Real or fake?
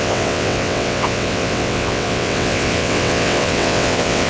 fake